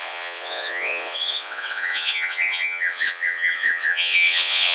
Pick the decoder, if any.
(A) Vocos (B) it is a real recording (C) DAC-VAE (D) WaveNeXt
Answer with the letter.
D